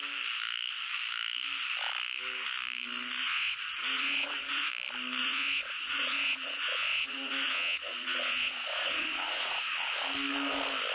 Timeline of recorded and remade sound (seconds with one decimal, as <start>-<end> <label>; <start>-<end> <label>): 0.0-3.2 recorded; 3.2-4.7 remade; 4.7-5.2 recorded; 5.2-10.0 remade; 10.0-10.9 recorded

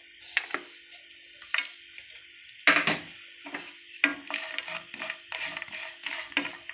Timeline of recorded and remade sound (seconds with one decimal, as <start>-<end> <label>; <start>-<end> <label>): 0.0-6.7 recorded

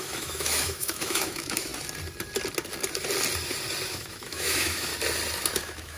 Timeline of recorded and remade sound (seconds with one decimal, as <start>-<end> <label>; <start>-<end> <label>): 0.0-1.7 remade; 1.7-3.9 recorded; 3.9-4.9 remade; 4.9-5.6 recorded; 5.6-6.0 remade

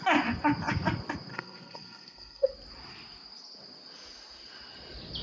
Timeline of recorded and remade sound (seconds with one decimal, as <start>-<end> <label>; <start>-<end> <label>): 0.0-1.3 recorded; 1.3-2.5 remade; 2.5-5.2 recorded